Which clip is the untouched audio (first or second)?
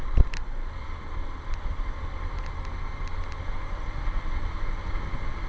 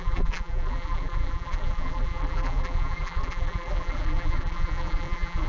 first